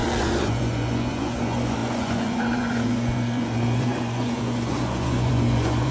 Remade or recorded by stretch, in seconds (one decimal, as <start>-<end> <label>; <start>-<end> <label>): 0.0-5.9 remade